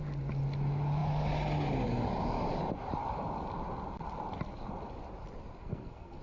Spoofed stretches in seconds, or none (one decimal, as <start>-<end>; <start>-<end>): 5.6-6.2